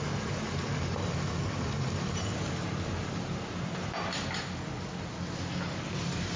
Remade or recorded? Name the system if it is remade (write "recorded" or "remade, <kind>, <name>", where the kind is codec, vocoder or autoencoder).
remade, vocoder, BigVGAN v2